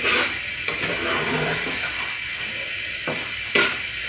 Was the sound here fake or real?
real